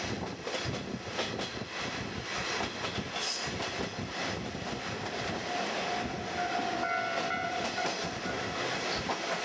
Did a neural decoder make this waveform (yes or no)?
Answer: no